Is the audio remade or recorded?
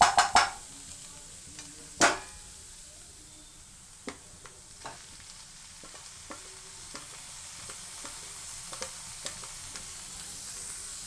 recorded